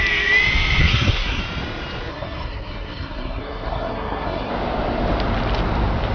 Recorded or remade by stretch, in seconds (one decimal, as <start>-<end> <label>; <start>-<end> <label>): 0.0-0.8 recorded; 0.8-1.4 remade; 1.4-2.1 recorded; 2.1-4.5 remade; 4.5-6.1 recorded